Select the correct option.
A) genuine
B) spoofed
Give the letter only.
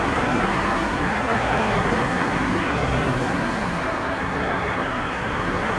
B